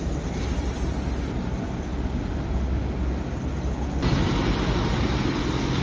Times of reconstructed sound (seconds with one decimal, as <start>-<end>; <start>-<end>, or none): none